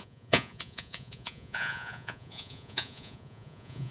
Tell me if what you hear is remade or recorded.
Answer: remade